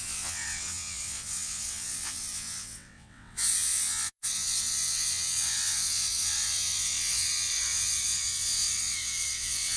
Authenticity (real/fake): fake